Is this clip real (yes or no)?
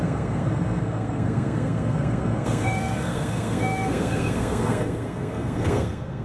no